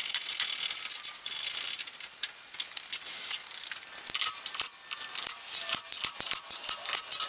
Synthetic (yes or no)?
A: no